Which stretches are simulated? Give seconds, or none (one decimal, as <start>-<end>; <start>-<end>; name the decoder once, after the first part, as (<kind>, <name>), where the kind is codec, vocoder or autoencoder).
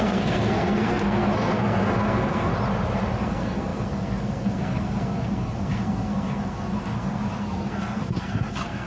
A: 0.0-2.5 (codec, SNAC); 3.2-8.9